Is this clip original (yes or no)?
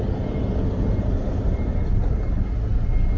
yes